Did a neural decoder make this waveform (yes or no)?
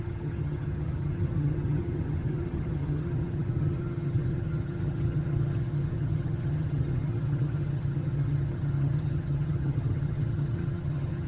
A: yes